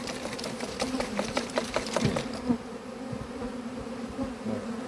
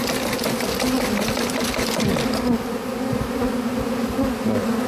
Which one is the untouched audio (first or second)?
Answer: second